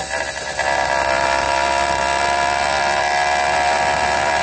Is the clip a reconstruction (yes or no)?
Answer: no